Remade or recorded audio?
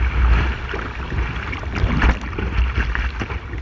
recorded